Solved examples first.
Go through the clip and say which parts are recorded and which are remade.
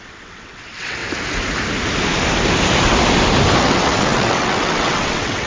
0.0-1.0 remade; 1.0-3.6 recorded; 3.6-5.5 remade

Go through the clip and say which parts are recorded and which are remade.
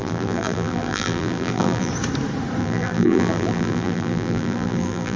0.0-1.9 remade; 1.9-2.6 recorded; 2.6-5.2 remade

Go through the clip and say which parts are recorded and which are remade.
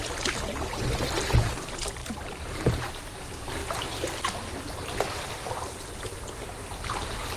0.0-2.0 recorded; 2.0-3.2 remade; 3.2-7.4 recorded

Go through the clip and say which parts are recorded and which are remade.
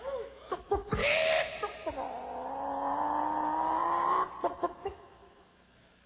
0.0-1.0 remade; 1.0-4.6 recorded; 4.6-6.1 remade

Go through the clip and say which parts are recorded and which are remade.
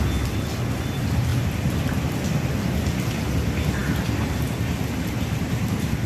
0.0-6.1 recorded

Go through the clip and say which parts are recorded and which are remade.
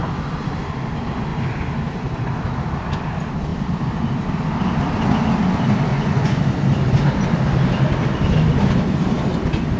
0.0-5.9 recorded; 5.9-6.4 remade; 6.4-9.8 recorded